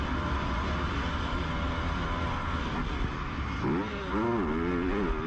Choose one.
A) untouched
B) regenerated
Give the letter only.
A